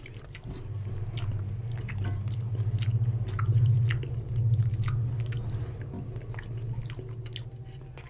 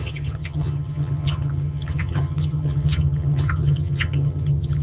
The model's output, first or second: second